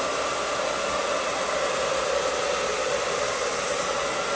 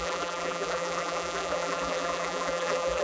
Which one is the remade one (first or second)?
second